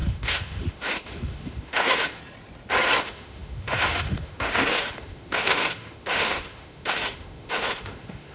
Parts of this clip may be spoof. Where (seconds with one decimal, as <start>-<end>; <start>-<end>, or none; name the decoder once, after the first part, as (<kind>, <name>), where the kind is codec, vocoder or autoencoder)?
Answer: 0.0-2.2 (autoencoder, DAC-VAE); 3.0-8.3